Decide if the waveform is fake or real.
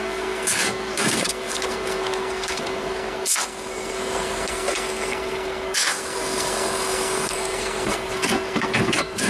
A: fake